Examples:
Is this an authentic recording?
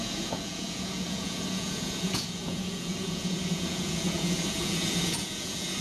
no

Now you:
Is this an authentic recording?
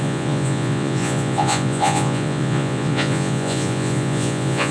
no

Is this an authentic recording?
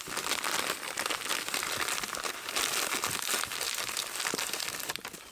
yes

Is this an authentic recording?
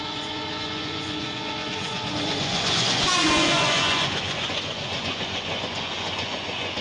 no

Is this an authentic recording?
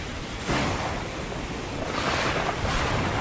yes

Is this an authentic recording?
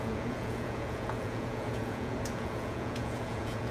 no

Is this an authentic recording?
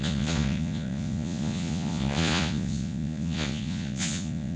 no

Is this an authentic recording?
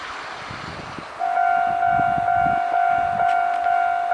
yes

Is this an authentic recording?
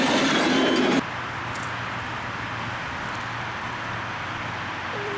yes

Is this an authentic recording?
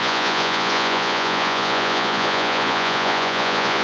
no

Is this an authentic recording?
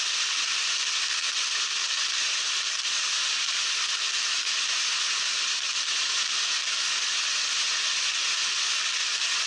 yes